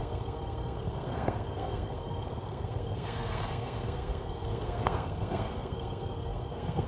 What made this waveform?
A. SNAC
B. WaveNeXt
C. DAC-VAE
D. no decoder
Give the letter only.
A